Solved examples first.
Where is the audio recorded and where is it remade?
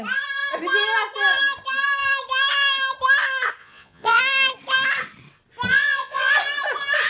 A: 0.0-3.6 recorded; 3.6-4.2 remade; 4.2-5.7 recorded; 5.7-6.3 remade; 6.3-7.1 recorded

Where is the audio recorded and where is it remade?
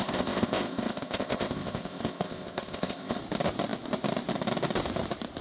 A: 0.0-3.2 remade; 3.2-5.4 recorded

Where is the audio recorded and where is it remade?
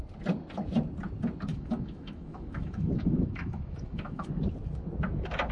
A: 0.0-1.5 recorded; 1.5-4.3 remade; 4.3-5.5 recorded